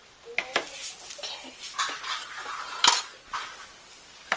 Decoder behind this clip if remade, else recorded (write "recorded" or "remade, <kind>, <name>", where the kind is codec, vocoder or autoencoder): recorded